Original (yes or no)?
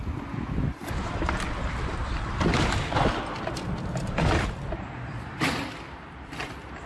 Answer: no